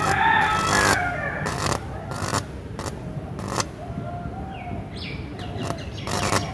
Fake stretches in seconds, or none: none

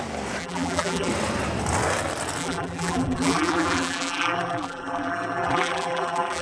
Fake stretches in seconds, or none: 0.4-1.1; 2.4-6.4

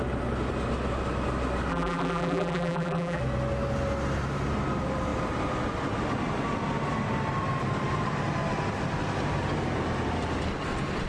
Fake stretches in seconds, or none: 1.7-3.2

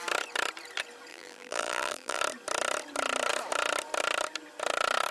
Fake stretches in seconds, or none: 1.1-2.2